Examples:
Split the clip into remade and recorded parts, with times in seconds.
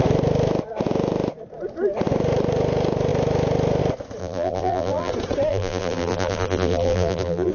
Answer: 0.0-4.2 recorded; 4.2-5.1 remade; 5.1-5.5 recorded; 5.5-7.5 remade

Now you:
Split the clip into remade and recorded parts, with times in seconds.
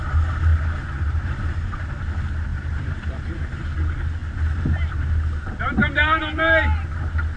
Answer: 0.0-0.5 recorded; 0.5-1.8 remade; 1.8-2.5 recorded; 2.5-3.6 remade; 3.6-7.4 recorded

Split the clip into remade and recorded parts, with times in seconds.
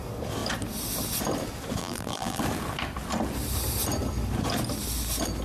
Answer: 0.0-1.8 recorded; 1.8-2.4 remade; 2.4-5.4 recorded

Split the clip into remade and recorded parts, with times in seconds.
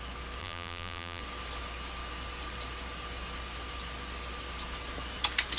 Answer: 0.0-0.4 recorded; 0.4-1.2 remade; 1.2-5.6 recorded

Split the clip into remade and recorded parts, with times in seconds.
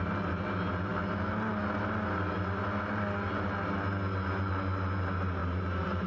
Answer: 0.0-5.4 recorded; 5.4-6.1 remade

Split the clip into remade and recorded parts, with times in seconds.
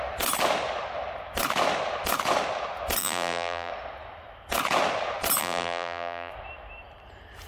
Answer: 0.0-3.0 recorded; 3.0-3.7 remade; 3.7-5.4 recorded; 5.4-6.3 remade; 6.3-7.5 recorded